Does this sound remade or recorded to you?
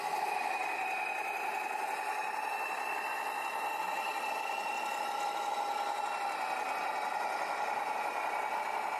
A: recorded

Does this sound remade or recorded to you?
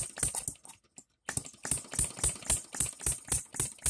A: recorded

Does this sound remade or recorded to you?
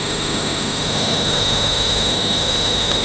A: remade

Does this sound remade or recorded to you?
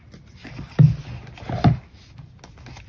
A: recorded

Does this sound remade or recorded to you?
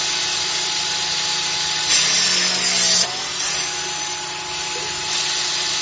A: recorded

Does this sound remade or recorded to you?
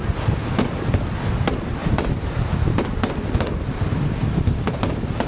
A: recorded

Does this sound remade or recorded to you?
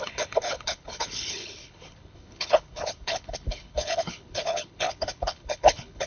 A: remade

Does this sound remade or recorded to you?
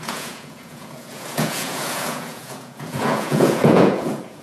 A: remade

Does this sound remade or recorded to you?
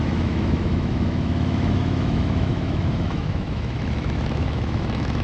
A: remade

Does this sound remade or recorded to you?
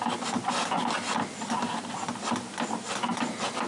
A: recorded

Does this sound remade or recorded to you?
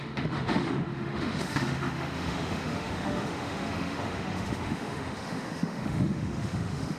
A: remade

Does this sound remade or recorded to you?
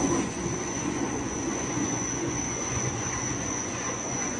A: remade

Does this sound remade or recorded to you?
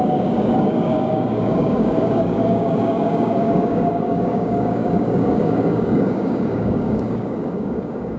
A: remade